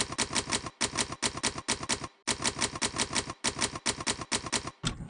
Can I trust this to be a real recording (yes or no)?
yes